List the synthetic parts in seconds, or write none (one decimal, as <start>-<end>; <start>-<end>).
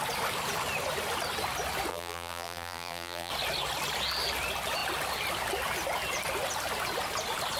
1.9-3.3